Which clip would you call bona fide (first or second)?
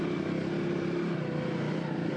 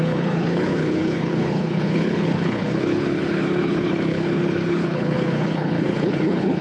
first